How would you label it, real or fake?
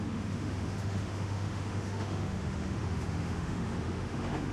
fake